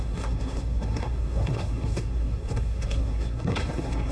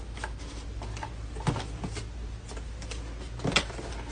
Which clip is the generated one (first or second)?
first